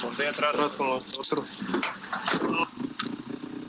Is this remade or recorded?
recorded